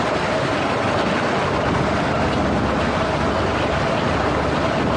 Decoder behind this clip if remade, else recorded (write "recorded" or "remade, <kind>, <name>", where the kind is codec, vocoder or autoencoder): recorded